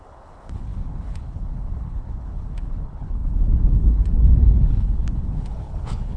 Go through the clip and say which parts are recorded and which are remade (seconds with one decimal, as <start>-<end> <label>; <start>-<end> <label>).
0.0-6.2 remade